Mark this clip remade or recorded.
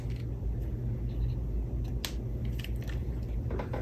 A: recorded